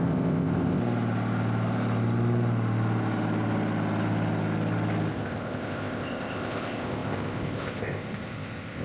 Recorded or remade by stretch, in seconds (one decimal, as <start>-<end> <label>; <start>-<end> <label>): 0.0-0.8 remade; 0.8-5.1 recorded; 5.1-8.8 remade